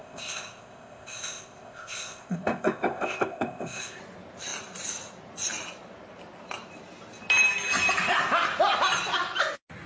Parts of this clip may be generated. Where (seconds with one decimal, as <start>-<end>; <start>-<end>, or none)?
0.0-4.0